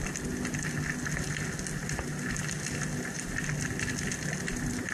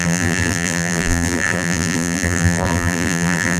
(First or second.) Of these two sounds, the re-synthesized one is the second